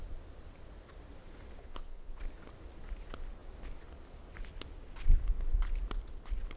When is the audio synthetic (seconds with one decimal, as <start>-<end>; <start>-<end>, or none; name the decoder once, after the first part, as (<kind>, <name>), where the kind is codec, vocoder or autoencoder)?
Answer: 1.6-2.2 (vocoder, Vocos)